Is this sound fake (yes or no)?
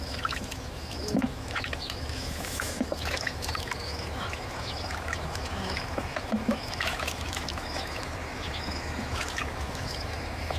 yes